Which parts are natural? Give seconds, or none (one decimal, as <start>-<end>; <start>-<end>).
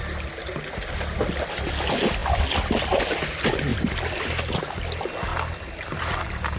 0.0-6.6